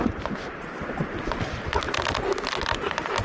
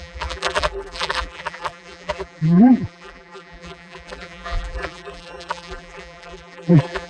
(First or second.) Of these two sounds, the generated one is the second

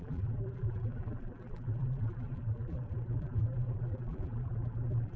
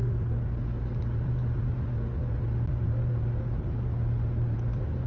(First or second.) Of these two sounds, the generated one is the first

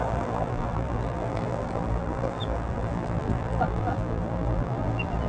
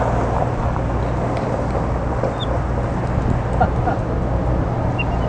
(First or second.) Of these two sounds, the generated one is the first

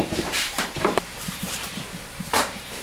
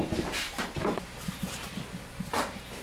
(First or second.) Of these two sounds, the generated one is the first